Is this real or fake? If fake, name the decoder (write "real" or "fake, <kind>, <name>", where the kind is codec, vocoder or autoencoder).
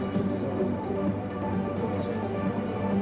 fake, vocoder, BigVGAN v2